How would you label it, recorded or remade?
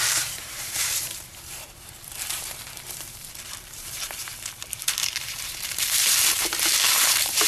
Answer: remade